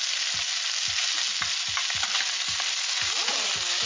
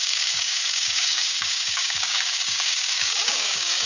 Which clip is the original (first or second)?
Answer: first